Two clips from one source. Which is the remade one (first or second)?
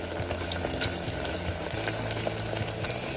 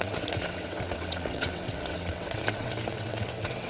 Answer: second